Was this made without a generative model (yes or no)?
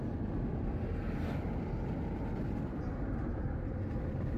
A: yes